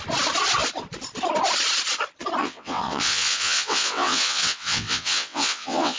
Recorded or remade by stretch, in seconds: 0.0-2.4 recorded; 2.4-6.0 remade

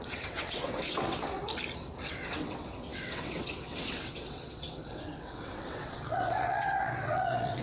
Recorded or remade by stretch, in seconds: 0.0-1.4 remade; 1.4-2.0 recorded; 2.0-7.6 remade

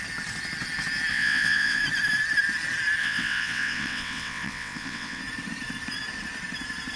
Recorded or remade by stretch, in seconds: 0.0-1.1 recorded; 1.1-1.8 remade; 1.8-3.0 recorded; 3.0-5.2 remade; 5.2-7.0 recorded

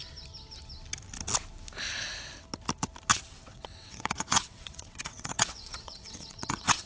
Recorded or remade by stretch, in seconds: 0.0-3.1 recorded; 3.1-6.9 remade

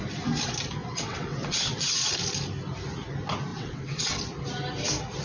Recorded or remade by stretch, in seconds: 0.0-0.8 recorded; 0.8-2.1 remade; 2.1-3.5 recorded; 3.5-4.2 remade; 4.2-5.2 recorded

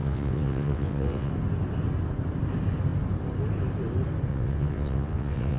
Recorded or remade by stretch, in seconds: 0.0-1.3 remade; 1.3-4.3 recorded; 4.3-5.6 remade

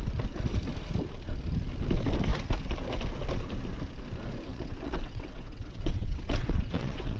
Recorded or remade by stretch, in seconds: 0.0-4.5 recorded; 4.5-7.2 remade